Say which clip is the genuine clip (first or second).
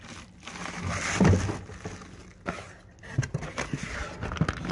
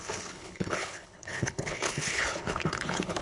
first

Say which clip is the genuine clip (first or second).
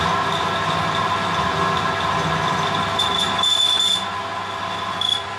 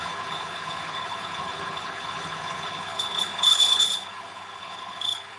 first